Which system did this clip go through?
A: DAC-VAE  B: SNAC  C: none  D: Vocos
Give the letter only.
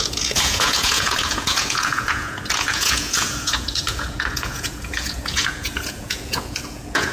D